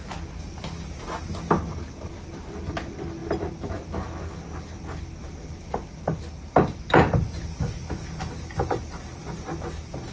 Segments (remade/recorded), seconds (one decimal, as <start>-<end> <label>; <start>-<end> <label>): 0.0-10.1 recorded